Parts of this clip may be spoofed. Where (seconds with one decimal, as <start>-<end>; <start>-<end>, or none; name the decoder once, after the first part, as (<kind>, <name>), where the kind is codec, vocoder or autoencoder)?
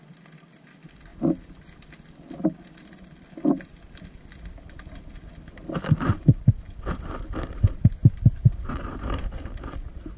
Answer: 8.0-9.4 (vocoder, BigVGAN v2)